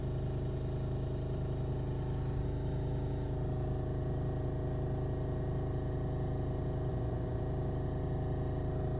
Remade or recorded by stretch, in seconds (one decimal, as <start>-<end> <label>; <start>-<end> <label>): 0.0-6.9 recorded; 6.9-7.4 remade; 7.4-9.0 recorded